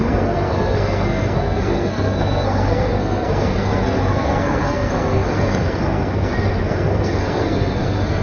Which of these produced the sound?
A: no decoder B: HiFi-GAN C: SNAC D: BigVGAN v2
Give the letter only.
C